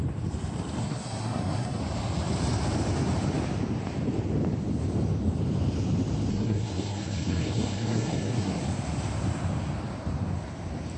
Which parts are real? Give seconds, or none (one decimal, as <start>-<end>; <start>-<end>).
0.0-0.8; 1.8-6.3; 8.6-11.0